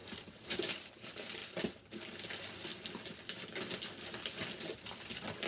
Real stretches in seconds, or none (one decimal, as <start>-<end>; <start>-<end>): 1.4-2.2; 2.7-4.7